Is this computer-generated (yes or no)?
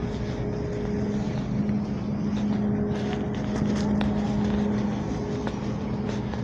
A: no